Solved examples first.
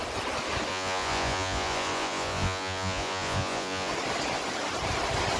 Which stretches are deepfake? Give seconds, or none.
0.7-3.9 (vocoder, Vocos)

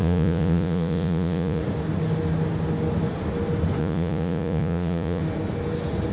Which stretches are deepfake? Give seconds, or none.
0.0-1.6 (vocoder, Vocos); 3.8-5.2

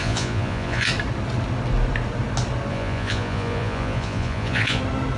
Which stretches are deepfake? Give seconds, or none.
0.0-0.9 (vocoder, Vocos); 2.7-4.8